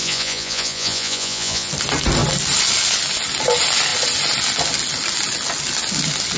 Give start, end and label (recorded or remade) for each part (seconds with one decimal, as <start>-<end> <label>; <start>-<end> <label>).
0.0-1.7 remade; 1.7-6.4 recorded